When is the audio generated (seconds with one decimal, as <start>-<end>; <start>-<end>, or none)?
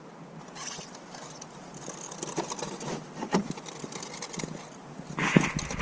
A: 3.0-3.7